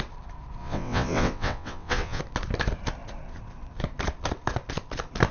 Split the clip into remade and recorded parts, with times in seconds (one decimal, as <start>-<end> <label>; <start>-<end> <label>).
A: 0.0-0.6 recorded; 0.6-2.2 remade; 2.2-5.3 recorded